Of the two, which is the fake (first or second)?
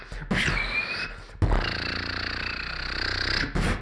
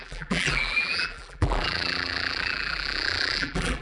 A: second